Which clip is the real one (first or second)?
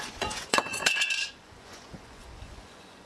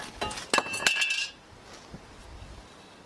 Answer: second